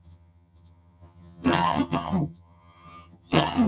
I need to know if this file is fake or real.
fake